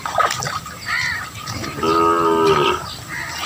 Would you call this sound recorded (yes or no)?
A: yes